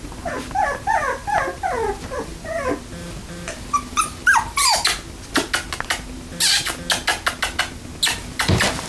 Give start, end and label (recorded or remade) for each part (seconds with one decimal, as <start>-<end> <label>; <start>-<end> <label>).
0.0-8.9 recorded